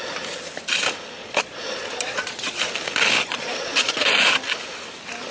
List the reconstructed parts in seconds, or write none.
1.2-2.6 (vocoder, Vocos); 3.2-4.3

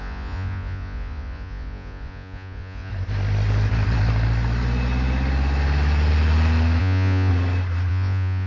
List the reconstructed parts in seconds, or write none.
0.0-2.9 (vocoder, Vocos); 6.8-7.3; 7.9-8.5

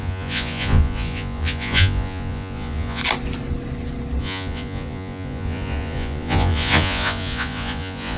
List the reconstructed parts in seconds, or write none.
0.0-3.0 (vocoder, Vocos); 4.2-8.2

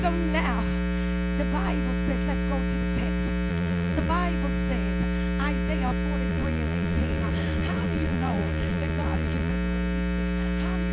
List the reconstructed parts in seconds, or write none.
3.5-4.1 (vocoder, Vocos); 6.3-9.5

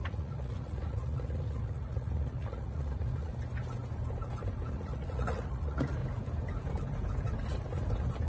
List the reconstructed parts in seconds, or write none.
0.0-3.3 (vocoder, Vocos); 4.7-6.0